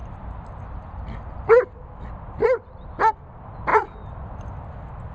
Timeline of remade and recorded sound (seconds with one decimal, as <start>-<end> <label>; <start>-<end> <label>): 0.0-5.1 recorded